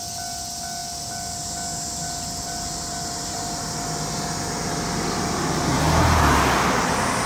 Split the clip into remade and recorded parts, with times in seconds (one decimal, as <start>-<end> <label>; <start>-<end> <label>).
0.0-7.3 recorded